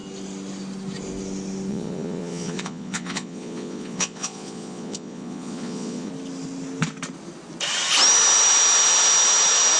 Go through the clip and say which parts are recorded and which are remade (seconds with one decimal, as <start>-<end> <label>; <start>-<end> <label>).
0.0-1.7 recorded; 1.7-6.1 remade; 6.1-9.8 recorded